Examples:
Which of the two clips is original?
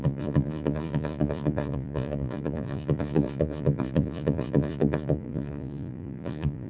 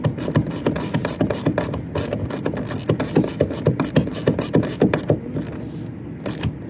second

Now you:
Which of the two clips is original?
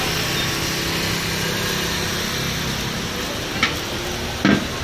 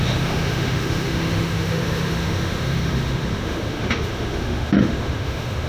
first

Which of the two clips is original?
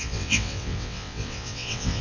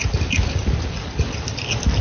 second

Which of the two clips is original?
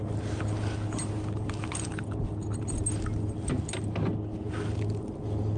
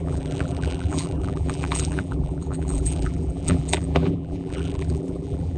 first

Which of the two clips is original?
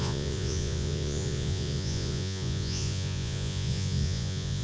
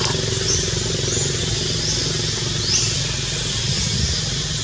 second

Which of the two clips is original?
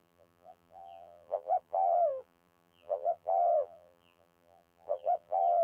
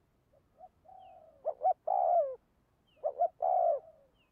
second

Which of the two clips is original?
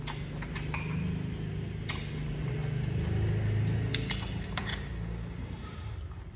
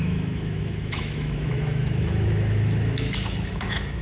first